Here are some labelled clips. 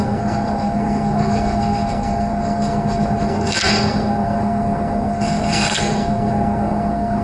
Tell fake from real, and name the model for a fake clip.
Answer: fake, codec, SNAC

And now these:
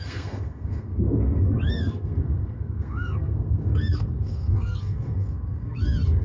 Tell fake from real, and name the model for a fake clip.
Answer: fake, codec, SNAC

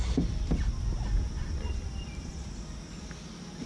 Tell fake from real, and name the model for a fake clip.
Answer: real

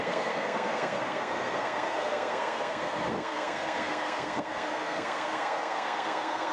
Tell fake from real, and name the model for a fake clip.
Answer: fake, codec, SNAC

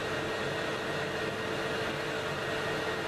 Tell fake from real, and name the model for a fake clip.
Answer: real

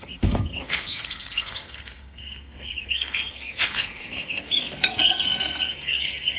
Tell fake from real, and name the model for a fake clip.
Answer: fake, codec, SNAC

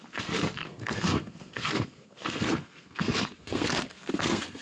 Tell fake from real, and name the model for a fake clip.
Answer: fake, codec, SNAC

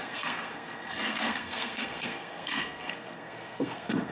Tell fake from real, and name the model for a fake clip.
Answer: fake, codec, SNAC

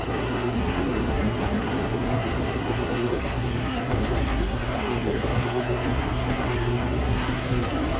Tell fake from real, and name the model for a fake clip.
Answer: fake, codec, SNAC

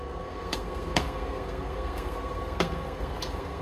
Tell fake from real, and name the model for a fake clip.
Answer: fake, codec, SNAC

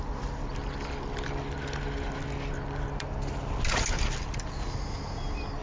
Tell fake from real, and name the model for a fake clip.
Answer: real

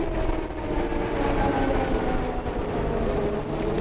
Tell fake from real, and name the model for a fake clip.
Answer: real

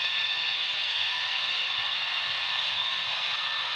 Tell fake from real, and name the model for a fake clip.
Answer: fake, codec, SNAC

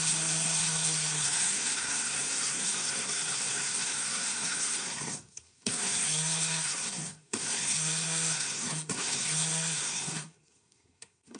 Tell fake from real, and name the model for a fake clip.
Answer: fake, codec, SNAC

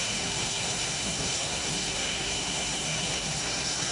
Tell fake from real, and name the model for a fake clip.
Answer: fake, codec, SNAC